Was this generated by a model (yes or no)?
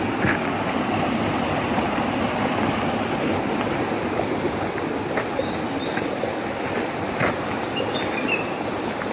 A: no